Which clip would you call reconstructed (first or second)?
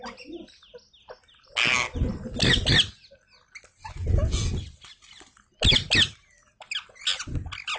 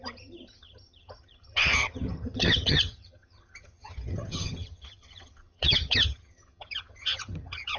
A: second